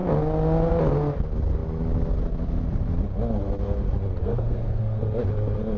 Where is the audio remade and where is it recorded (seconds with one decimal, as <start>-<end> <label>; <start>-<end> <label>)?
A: 0.0-4.2 recorded; 4.2-5.0 remade; 5.0-5.8 recorded